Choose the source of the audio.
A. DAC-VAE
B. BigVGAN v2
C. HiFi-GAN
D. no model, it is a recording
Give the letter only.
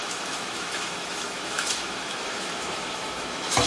A